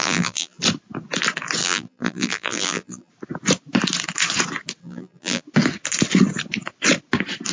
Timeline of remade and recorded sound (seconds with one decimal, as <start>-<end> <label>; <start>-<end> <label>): 0.0-0.6 remade; 0.6-1.6 recorded; 1.6-3.1 remade; 3.1-4.8 recorded; 4.8-5.4 remade; 5.4-7.5 recorded